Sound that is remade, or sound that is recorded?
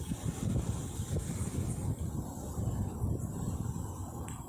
recorded